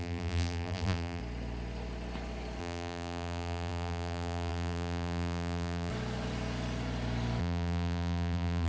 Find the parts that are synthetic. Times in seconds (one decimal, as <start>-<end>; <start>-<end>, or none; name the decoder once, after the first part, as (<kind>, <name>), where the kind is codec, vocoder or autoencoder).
0.0-1.2 (vocoder, BigVGAN v2); 2.6-5.9; 7.4-8.7